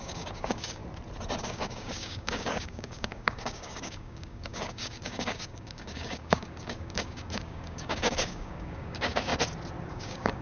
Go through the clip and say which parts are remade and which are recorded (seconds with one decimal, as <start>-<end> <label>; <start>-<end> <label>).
0.0-0.8 remade; 0.8-1.4 recorded; 1.4-9.3 remade; 9.3-9.9 recorded; 9.9-10.4 remade